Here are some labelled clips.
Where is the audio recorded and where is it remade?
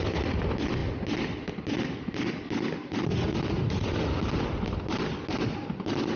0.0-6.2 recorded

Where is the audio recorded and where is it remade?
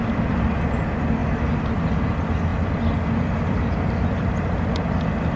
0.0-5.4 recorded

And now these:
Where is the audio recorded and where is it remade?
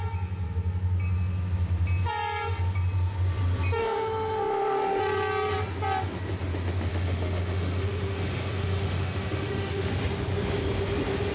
0.0-3.8 recorded; 3.8-5.0 remade; 5.0-6.9 recorded; 6.9-9.9 remade; 9.9-11.3 recorded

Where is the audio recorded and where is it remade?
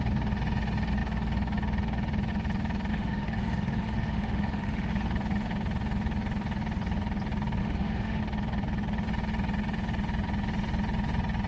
0.0-2.9 recorded; 2.9-4.9 remade; 4.9-7.6 recorded; 7.6-8.2 remade; 8.2-11.5 recorded